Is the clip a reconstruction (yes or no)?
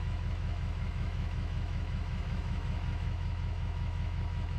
yes